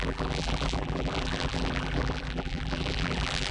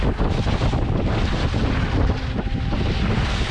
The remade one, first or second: first